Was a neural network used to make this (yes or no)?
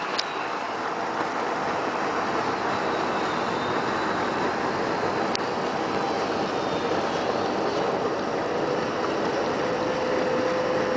no